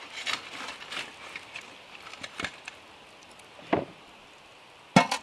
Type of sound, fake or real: real